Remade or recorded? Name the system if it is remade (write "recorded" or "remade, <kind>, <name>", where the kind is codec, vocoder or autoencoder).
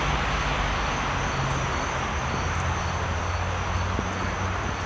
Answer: recorded